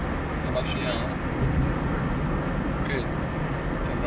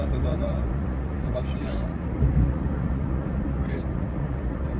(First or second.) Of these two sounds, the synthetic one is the second